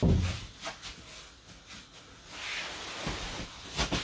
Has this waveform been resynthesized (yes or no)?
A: no